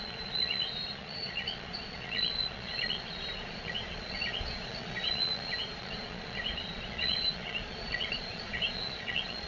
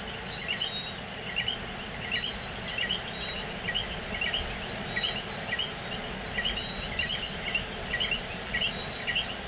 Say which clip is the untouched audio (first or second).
second